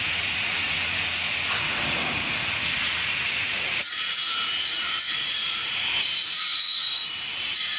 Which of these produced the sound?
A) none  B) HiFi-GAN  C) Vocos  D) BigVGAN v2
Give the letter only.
C